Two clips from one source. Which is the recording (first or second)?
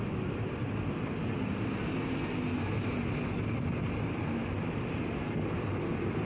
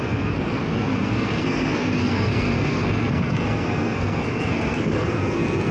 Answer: first